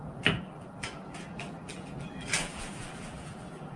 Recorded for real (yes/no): no